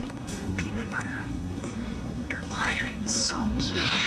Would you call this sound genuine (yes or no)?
no